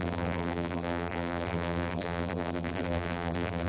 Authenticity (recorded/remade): remade